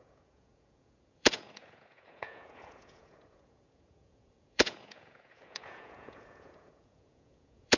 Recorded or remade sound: remade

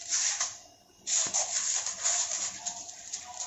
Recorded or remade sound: remade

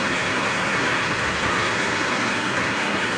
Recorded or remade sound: remade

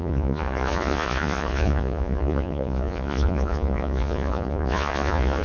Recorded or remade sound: remade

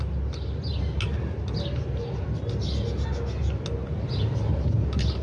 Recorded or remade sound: recorded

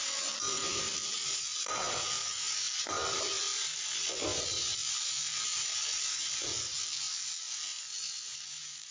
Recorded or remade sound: recorded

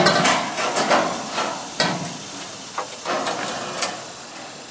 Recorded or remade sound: recorded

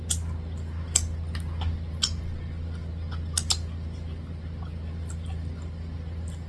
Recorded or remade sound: recorded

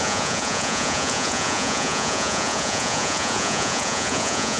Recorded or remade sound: remade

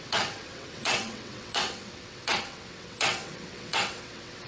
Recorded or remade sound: remade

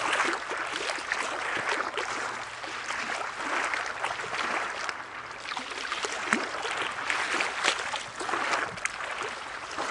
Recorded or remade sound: recorded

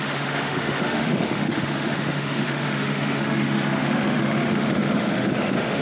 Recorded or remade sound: remade